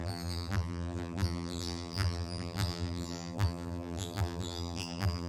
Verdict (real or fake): fake